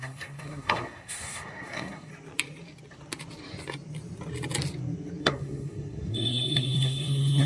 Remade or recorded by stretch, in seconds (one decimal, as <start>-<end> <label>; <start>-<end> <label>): 0.0-2.1 remade; 2.1-5.2 recorded; 5.2-7.5 remade